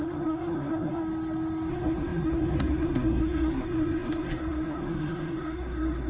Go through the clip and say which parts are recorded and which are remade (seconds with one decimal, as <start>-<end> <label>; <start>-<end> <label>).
0.0-1.0 remade; 1.0-1.7 recorded; 1.7-6.1 remade